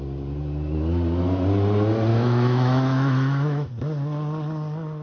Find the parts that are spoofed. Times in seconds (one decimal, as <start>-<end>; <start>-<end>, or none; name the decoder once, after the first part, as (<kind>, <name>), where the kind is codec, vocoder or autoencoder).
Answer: 2.1-3.7 (autoencoder, DAC-VAE)